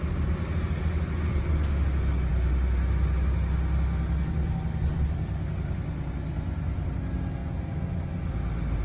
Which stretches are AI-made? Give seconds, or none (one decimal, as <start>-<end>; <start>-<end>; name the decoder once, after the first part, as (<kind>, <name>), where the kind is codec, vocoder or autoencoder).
none